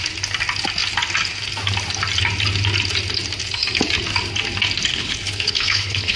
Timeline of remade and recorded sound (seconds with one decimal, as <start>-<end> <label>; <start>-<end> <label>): 0.0-4.9 recorded; 4.9-6.2 remade